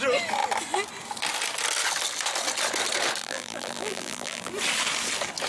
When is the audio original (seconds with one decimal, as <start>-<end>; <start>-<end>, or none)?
0.0-3.2; 4.5-5.5